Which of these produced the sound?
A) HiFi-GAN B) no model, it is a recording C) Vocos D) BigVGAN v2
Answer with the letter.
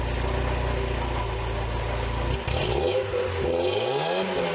B